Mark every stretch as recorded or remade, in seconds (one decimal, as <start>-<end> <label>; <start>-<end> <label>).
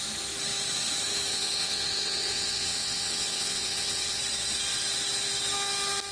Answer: 0.0-1.3 recorded; 1.3-4.2 remade; 4.2-6.1 recorded